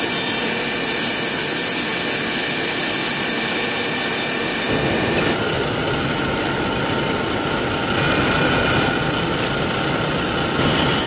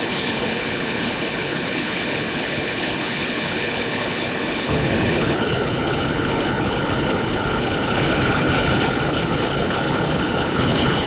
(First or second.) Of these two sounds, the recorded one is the first